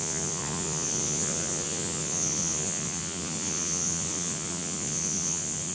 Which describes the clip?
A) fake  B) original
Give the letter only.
A